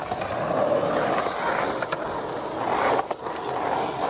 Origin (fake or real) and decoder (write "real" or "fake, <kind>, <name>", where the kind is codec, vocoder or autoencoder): real